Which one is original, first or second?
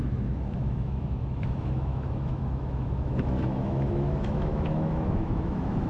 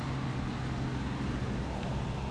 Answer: second